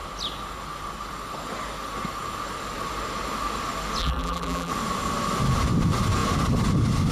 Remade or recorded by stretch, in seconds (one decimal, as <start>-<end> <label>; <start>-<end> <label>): 0.0-4.0 recorded; 4.0-4.7 remade; 4.7-7.1 recorded

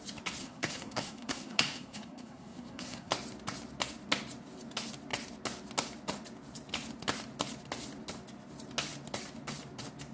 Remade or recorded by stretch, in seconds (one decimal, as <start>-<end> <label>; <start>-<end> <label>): 0.0-0.4 recorded; 0.4-3.1 remade; 3.1-10.1 recorded

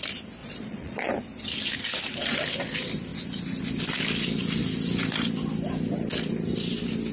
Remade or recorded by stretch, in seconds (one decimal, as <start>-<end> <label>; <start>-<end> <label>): 0.0-0.4 recorded; 0.4-1.1 remade; 1.1-7.1 recorded

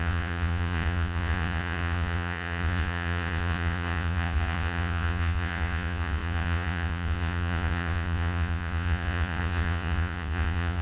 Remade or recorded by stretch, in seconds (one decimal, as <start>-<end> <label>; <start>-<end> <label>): 0.0-10.8 remade